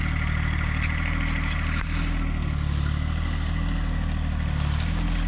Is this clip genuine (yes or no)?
yes